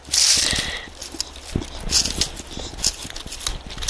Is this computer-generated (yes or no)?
no